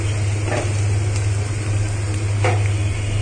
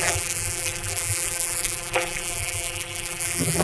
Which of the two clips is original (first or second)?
first